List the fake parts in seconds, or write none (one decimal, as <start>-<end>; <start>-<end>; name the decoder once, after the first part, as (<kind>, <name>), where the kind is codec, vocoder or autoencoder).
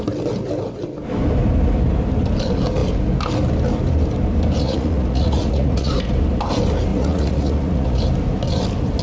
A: 4.6-5.9 (vocoder, Vocos); 6.9-8.0